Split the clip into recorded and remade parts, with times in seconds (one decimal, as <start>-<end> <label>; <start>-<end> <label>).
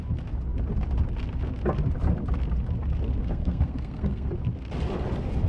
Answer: 0.0-3.2 recorded; 3.2-4.3 remade; 4.3-5.5 recorded